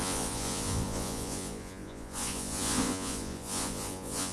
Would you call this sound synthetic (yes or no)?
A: yes